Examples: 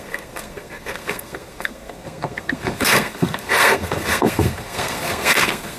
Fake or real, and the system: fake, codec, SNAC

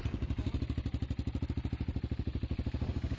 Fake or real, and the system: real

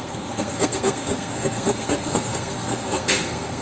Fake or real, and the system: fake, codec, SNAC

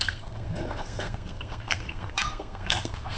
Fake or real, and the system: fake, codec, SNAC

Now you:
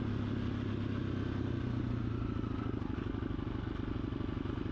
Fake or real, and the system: real